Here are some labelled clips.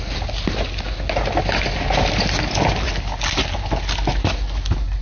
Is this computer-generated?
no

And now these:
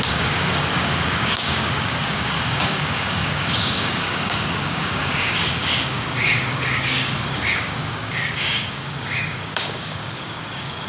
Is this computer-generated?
yes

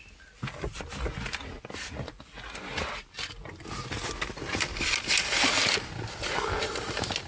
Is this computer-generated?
no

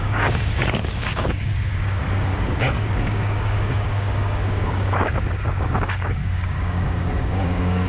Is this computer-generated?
yes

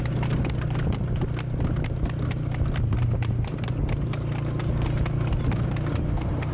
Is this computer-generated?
no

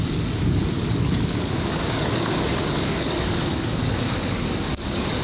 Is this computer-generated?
yes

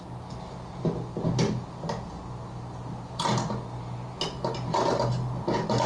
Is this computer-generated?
no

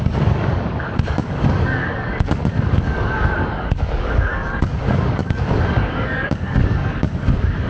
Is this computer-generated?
yes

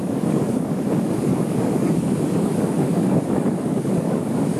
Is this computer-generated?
yes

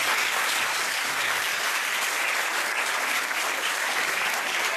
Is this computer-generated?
yes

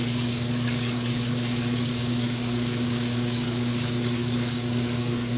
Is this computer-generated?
yes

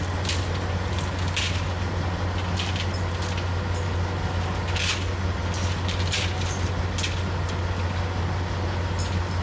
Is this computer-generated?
no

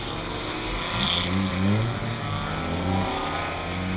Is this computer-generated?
no